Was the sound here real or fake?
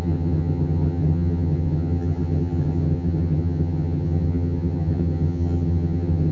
fake